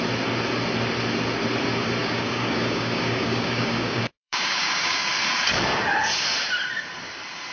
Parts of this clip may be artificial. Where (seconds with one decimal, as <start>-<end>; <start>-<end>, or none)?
2.0-5.1

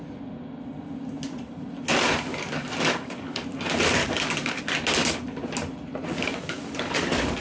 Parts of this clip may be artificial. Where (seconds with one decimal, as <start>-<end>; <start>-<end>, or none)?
2.3-3.4; 4.0-4.6; 6.1-7.4